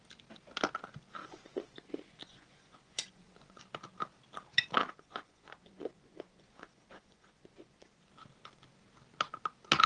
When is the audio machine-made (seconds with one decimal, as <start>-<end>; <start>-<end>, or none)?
1.2-3.6; 4.8-8.1